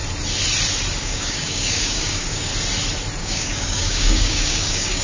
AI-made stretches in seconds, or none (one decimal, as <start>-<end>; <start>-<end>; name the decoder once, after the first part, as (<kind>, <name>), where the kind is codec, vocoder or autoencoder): 1.0-2.5 (codec, DAC); 3.2-5.0